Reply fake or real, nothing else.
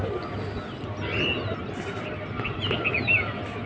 real